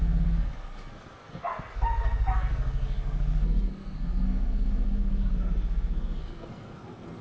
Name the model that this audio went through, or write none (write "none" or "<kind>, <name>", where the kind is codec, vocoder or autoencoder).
codec, SNAC